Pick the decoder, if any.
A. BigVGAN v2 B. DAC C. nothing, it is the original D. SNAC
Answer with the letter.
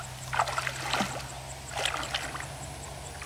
C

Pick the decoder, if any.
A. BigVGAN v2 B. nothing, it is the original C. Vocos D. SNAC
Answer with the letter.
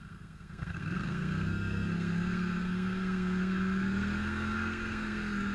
D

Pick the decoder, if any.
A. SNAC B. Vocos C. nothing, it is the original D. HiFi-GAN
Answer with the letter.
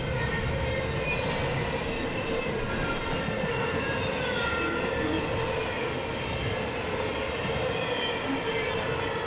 C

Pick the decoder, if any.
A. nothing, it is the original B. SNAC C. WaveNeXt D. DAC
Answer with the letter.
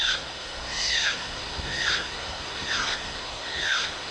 B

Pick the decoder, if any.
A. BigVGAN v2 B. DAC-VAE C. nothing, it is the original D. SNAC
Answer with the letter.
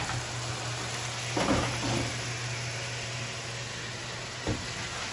C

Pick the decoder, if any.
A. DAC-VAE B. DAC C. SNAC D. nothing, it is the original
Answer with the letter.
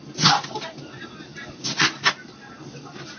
D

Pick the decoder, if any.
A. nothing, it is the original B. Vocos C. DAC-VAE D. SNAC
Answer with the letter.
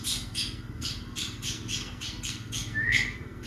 D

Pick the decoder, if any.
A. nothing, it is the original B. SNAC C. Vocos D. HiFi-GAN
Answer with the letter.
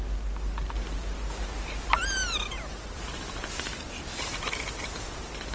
A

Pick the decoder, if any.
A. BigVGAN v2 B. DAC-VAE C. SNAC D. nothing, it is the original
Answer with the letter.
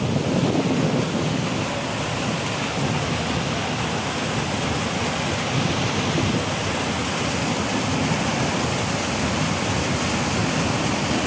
D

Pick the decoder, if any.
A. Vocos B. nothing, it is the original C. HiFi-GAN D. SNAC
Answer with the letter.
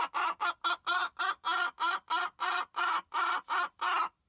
B